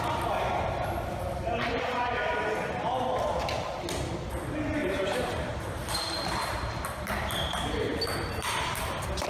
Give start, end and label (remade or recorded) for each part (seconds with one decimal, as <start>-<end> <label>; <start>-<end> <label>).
0.0-4.8 recorded; 4.8-6.8 remade; 6.8-9.3 recorded